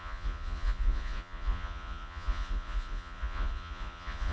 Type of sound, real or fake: fake